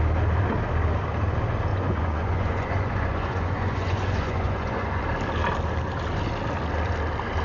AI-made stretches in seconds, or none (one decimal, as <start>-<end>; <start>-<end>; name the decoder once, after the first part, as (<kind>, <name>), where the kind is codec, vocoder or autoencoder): 1.7-5.0 (vocoder, Vocos)

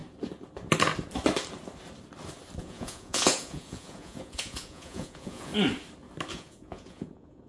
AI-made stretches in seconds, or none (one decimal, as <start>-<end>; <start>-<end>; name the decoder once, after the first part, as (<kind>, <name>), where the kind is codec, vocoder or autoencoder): 2.6-5.5 (vocoder, Vocos); 6.3-7.5

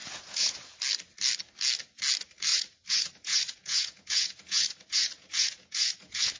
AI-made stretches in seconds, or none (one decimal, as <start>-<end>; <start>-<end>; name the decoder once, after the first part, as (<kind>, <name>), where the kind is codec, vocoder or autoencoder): 0.0-0.8 (vocoder, Vocos); 2.5-6.4

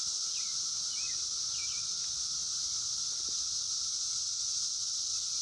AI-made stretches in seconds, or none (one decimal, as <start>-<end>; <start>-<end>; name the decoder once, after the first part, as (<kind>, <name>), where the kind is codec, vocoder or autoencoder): none

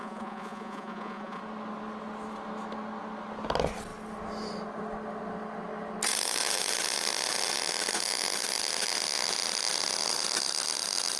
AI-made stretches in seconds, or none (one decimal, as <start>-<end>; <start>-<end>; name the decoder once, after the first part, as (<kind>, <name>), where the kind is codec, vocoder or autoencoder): 0.0-1.4 (vocoder, Vocos)